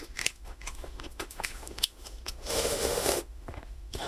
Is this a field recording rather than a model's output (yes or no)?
no